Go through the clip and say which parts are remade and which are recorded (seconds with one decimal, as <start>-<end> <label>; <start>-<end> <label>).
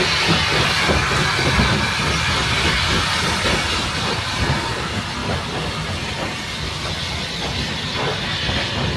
0.0-9.0 recorded